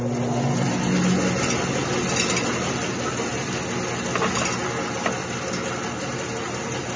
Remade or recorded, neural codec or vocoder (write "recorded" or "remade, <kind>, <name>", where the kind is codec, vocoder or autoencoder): recorded